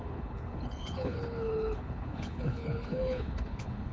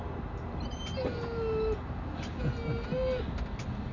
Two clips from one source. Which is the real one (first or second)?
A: second